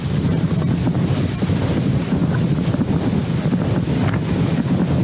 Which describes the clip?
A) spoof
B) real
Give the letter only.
B